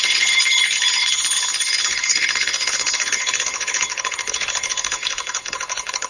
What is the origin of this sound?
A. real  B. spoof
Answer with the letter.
B